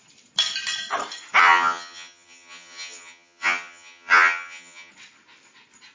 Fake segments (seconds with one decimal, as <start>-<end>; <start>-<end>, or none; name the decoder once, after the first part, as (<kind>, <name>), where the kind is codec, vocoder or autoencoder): 1.4-4.9 (vocoder, HiFi-GAN)